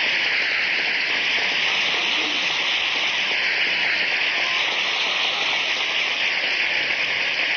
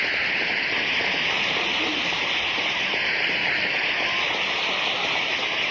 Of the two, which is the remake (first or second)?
second